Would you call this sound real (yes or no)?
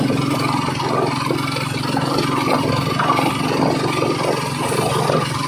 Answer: yes